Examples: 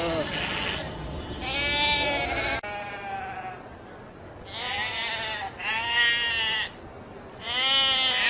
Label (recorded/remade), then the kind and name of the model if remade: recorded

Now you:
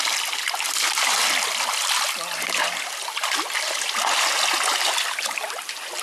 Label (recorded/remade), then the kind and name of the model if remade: recorded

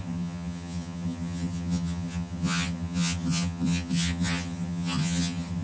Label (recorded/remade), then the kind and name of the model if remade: remade, vocoder, HiFi-GAN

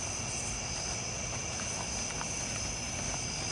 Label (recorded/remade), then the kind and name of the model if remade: recorded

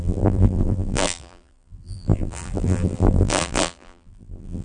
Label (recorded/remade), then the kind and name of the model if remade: remade, vocoder, BigVGAN v2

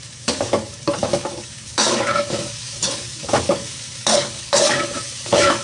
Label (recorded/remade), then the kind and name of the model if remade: remade, codec, DAC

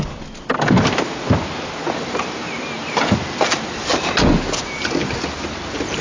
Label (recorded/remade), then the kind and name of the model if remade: recorded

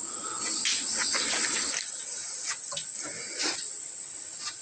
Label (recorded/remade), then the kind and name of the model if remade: recorded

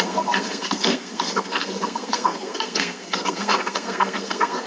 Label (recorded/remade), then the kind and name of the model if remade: remade, codec, SNAC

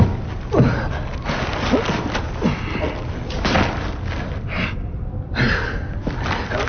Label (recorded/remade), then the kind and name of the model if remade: recorded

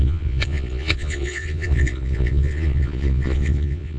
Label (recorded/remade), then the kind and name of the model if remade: remade, vocoder, Vocos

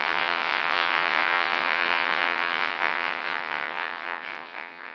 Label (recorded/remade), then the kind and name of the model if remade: remade, vocoder, WaveNeXt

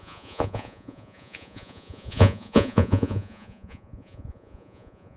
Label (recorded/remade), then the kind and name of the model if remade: remade, vocoder, Vocos